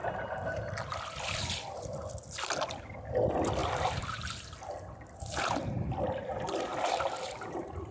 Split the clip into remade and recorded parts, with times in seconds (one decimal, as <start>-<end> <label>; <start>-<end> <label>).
0.0-0.7 recorded; 0.7-2.0 remade; 2.0-2.9 recorded; 2.9-6.7 remade; 6.7-7.5 recorded; 7.5-7.9 remade